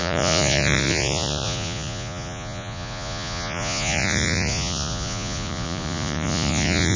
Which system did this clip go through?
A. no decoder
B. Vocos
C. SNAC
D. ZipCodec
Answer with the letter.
B